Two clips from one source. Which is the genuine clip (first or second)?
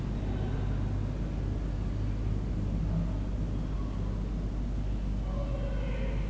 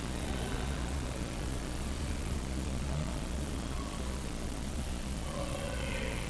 first